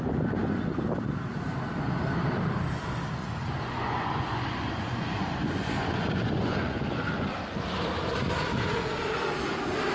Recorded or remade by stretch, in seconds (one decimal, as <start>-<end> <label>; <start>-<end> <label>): 0.0-3.2 recorded; 3.2-7.3 remade; 7.3-9.9 recorded